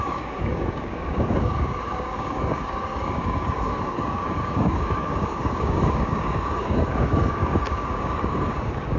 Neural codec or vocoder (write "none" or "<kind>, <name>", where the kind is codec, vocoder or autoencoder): codec, DAC